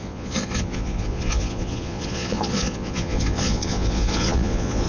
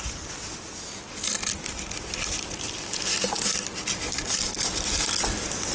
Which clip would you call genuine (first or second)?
second